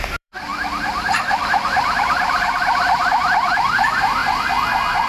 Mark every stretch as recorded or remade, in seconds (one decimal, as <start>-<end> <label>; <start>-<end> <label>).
0.0-4.2 remade; 4.2-5.1 recorded